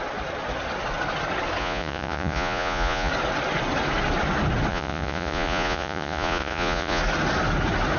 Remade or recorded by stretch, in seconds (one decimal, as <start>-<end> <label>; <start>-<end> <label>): 0.0-1.6 recorded; 1.6-3.1 remade; 3.1-4.7 recorded; 4.7-7.0 remade; 7.0-8.0 recorded